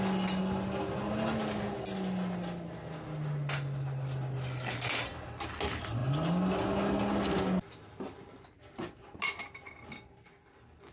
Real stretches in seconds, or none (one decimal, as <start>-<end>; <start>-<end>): 0.0-10.9